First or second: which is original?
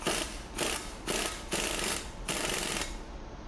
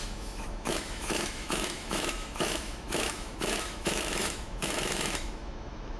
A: first